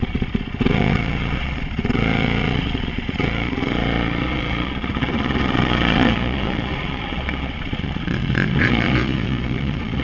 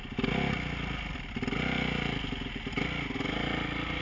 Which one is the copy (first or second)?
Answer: first